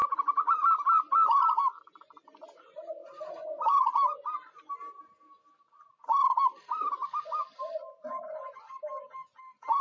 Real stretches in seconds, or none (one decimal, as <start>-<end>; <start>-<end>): 0.0-9.8